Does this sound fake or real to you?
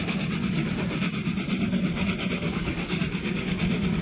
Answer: real